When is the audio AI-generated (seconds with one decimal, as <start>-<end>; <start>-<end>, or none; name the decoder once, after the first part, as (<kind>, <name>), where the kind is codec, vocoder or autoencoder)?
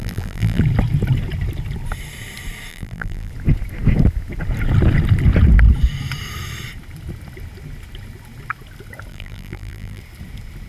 0.0-0.6 (vocoder, BigVGAN v2); 2.7-3.3; 9.1-10.0